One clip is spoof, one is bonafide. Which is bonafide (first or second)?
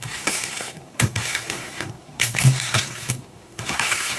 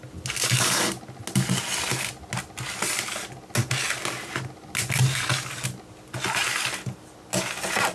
second